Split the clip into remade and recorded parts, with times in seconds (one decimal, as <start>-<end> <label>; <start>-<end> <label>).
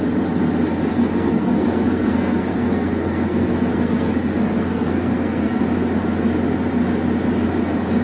0.0-0.9 recorded; 0.9-5.6 remade; 5.6-8.0 recorded